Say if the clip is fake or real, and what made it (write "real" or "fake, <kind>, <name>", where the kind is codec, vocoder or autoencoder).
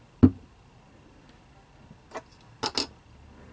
real